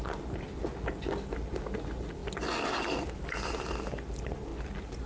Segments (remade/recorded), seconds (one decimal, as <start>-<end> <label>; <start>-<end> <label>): 0.0-5.1 recorded